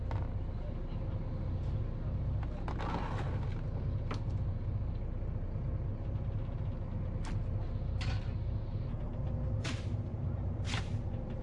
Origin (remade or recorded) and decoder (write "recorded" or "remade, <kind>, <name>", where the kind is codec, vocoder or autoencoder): recorded